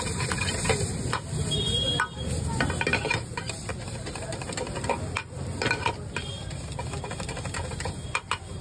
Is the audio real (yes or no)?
yes